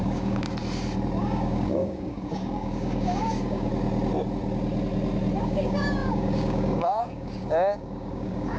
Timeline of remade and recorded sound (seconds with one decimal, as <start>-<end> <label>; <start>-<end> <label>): 0.0-0.6 remade; 0.6-1.2 recorded; 1.2-3.7 remade; 3.7-5.4 recorded; 5.4-8.6 remade